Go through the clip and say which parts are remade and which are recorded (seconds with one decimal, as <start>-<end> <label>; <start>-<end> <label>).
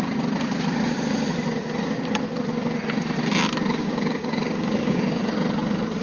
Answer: 0.0-3.8 recorded; 3.8-5.2 remade; 5.2-6.0 recorded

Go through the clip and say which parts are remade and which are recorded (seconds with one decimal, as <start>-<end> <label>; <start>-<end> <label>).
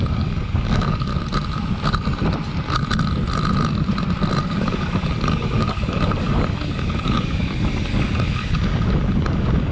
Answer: 0.0-1.1 remade; 1.1-4.4 recorded; 4.4-9.7 remade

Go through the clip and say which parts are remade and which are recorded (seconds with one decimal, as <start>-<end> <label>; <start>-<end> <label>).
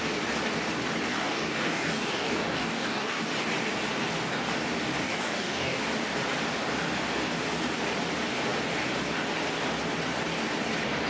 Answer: 0.0-1.1 recorded; 1.1-3.2 remade; 3.2-5.0 recorded; 5.0-5.8 remade; 5.8-11.1 recorded